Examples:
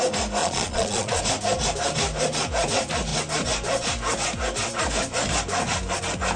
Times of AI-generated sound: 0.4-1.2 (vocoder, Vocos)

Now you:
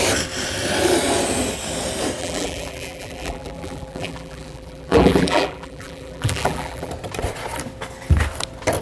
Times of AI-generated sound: 2.2-6.9 (vocoder, BigVGAN v2)

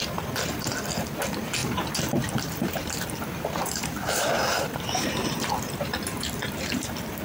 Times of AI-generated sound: 1.6-5.1 (vocoder, BigVGAN v2)

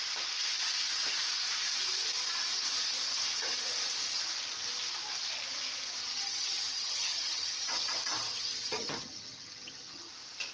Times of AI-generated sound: 6.0-10.1 (vocoder, HiFi-GAN)

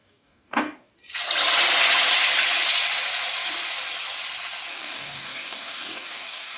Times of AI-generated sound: 0.0-0.9 (codec, DAC); 4.7-6.6

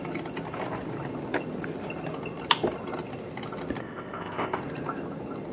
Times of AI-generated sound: 3.8-4.6 (codec, ZipCodec)